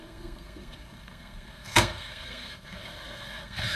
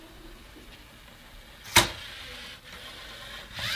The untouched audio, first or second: second